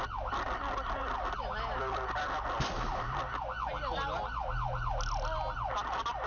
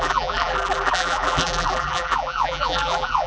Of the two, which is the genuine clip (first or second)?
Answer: first